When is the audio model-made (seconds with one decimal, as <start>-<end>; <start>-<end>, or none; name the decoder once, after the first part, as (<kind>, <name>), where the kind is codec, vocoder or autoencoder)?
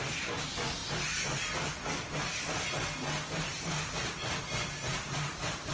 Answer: none